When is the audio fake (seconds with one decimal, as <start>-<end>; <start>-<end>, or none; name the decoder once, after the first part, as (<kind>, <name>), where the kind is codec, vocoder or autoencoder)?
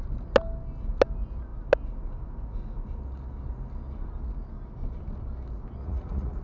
5.8-6.4 (vocoder, Vocos)